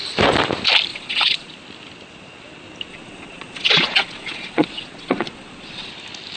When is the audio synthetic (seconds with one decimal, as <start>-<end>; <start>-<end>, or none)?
0.9-1.5; 2.9-5.9

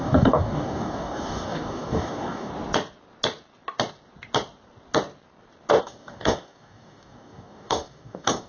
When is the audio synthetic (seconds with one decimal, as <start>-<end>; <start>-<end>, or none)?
0.0-2.5; 5.8-8.5

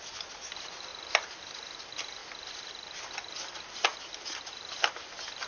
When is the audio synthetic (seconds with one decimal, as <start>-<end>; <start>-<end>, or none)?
3.9-4.7

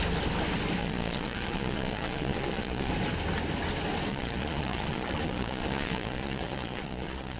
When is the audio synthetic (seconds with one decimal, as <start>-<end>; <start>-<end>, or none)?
0.8-2.9; 4.1-7.4